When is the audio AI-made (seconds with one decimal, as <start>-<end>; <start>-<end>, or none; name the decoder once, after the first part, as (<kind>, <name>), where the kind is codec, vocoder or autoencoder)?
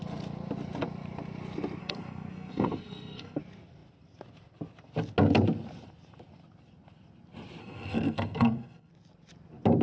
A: 1.8-3.4 (codec, SNAC); 7.6-8.9